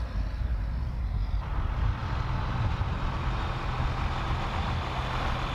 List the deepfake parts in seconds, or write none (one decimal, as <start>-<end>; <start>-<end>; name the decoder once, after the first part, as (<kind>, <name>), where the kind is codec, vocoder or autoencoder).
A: none